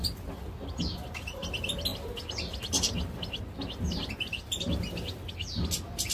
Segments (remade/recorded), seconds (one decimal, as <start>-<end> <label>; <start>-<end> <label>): 0.0-6.1 recorded